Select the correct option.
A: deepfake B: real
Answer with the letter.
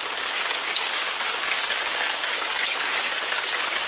A